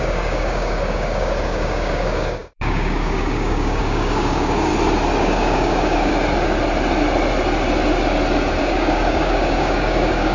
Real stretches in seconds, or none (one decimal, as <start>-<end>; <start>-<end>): 4.7-5.2; 6.1-8.6